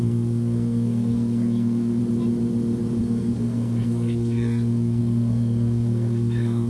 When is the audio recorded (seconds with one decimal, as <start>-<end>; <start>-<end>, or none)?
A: 2.0-3.0